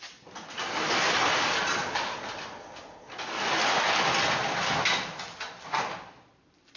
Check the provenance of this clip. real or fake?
real